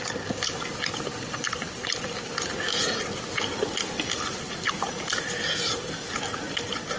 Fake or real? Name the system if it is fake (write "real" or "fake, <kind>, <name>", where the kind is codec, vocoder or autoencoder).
real